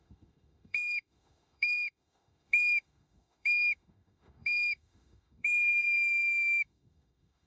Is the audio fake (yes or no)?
yes